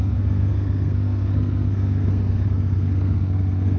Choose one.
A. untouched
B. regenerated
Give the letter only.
B